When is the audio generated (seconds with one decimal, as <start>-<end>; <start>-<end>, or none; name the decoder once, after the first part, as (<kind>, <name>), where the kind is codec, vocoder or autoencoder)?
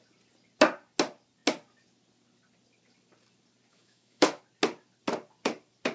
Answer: 3.7-4.4 (autoencoder, DAC-VAE)